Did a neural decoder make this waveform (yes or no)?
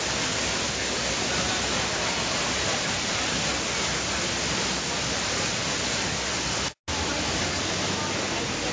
no